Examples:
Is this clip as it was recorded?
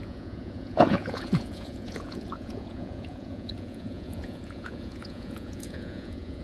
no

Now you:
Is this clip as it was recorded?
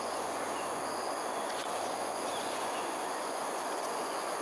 no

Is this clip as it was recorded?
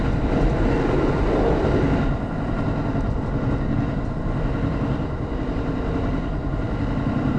yes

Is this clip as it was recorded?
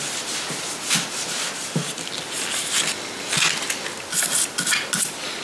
yes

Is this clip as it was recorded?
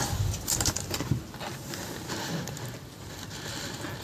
yes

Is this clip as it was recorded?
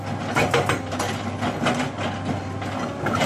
yes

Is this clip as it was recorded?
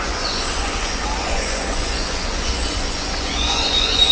no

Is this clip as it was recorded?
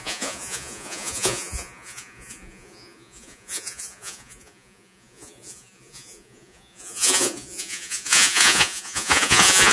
no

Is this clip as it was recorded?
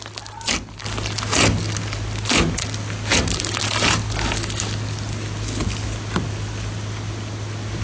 yes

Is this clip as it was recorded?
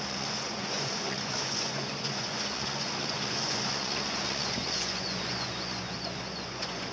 no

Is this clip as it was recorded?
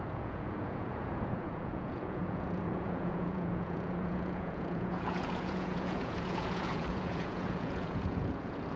no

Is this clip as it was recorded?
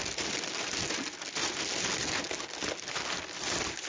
yes